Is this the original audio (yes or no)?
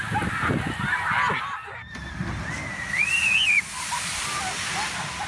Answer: yes